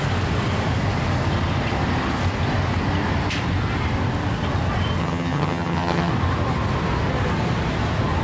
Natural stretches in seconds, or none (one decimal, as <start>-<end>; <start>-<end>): 0.0-5.0; 6.1-8.2